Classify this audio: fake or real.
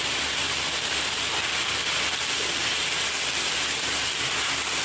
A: real